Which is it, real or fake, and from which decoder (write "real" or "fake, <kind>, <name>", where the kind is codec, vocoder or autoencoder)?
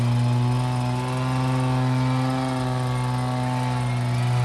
real